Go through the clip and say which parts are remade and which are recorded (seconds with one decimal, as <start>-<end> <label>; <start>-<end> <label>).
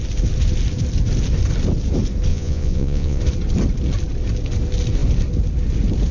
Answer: 0.0-2.3 recorded; 2.3-3.2 remade; 3.2-6.1 recorded